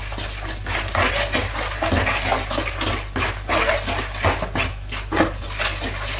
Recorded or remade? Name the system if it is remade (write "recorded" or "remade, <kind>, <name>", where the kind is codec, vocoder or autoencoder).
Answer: recorded